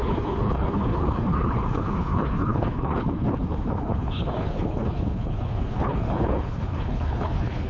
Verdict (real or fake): fake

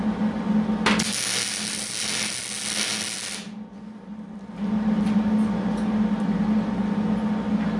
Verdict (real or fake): real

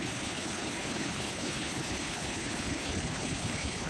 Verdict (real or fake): fake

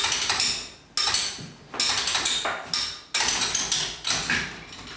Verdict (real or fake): real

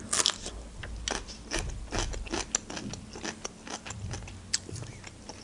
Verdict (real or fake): real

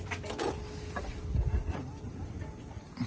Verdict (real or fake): real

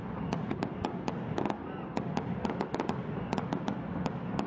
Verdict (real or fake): real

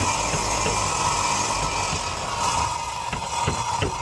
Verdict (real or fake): real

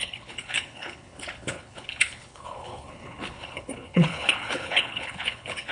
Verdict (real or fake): fake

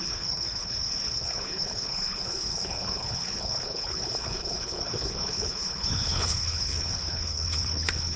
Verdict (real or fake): fake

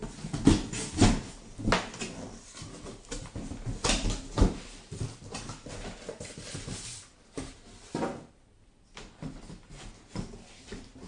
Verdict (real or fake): real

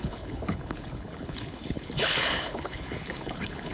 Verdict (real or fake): fake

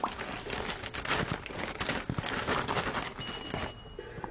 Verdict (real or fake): real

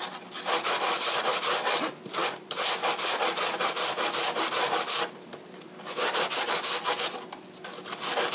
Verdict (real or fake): real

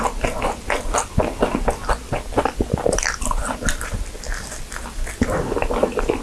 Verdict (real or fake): real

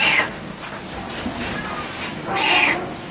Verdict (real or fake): real